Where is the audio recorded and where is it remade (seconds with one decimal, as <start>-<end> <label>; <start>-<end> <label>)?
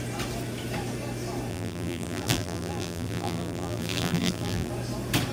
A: 0.0-1.5 recorded; 1.5-4.7 remade; 4.7-5.3 recorded